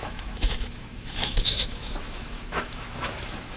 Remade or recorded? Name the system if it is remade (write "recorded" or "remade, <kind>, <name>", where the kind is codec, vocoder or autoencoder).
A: remade, autoencoder, DAC-VAE